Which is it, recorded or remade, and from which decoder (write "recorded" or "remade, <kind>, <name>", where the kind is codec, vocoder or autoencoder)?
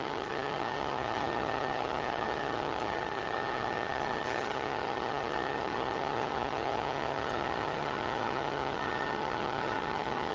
remade, vocoder, HiFi-GAN